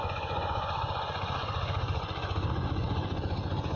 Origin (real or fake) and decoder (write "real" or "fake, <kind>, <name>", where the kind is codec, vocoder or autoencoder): fake, vocoder, Vocos